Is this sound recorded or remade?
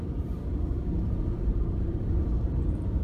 remade